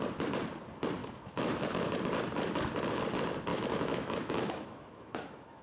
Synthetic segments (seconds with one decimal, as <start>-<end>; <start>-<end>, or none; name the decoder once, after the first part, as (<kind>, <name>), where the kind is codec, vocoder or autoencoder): 1.0-1.9 (autoencoder, DAC-VAE); 3.5-5.6